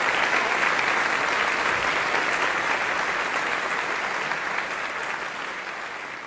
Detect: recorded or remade recorded